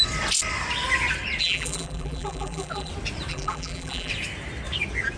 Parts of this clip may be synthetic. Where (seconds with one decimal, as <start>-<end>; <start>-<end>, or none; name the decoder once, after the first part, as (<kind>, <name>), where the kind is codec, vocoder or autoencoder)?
1.4-2.9 (vocoder, BigVGAN v2); 3.3-4.1